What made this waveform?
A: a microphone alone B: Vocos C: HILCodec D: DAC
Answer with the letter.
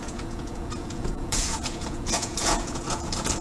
B